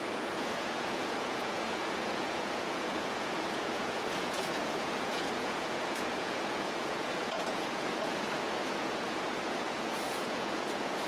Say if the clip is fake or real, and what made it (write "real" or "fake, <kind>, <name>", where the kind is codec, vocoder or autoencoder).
fake, vocoder, Vocos